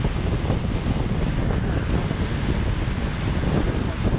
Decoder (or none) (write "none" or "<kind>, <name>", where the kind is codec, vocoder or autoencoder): none